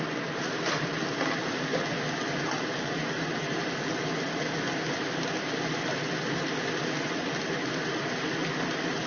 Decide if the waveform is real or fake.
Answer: real